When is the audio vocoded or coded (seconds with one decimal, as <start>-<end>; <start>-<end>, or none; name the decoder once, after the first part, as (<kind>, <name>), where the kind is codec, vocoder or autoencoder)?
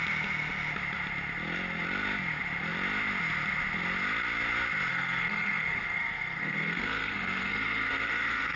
4.9-8.6 (codec, SNAC)